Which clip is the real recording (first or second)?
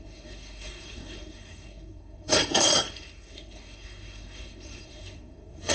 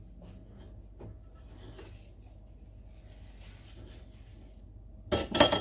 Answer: second